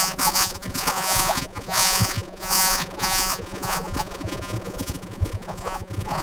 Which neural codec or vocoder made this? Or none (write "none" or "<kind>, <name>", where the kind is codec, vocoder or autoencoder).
vocoder, Vocos